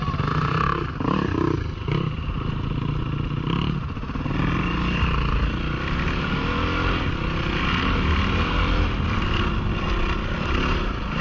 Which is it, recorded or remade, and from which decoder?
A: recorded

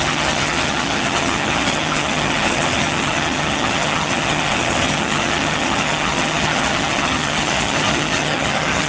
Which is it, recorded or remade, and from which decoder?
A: remade, vocoder, HiFi-GAN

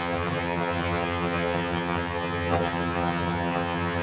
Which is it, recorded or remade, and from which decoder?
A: remade, vocoder, HiFi-GAN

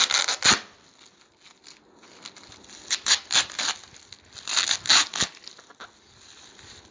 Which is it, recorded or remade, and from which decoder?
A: recorded